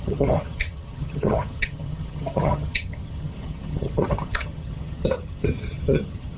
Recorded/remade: remade